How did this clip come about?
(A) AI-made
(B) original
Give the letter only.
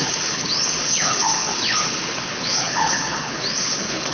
A